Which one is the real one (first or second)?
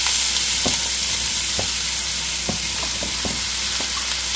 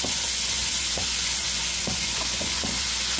first